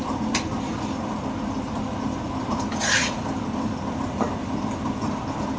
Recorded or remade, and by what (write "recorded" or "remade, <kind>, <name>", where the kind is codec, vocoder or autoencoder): recorded